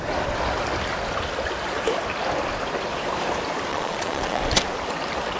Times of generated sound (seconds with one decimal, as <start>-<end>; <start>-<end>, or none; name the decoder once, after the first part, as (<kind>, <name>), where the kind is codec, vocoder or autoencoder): 3.7-4.4 (vocoder, Vocos)